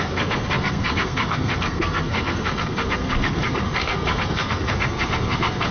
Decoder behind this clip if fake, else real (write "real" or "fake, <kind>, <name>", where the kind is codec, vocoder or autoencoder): fake, codec, SNAC